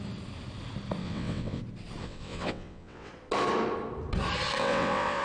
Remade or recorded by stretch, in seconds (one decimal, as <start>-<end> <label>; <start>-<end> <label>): 0.0-1.0 recorded; 1.0-1.6 remade; 1.6-2.0 recorded; 2.0-3.1 remade; 3.1-4.6 recorded; 4.6-5.2 remade